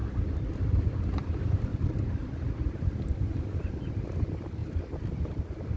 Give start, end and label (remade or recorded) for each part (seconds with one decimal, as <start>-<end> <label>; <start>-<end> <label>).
0.0-0.5 remade; 0.5-1.7 recorded; 1.7-3.7 remade; 3.7-4.6 recorded; 4.6-5.8 remade